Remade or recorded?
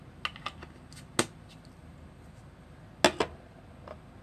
recorded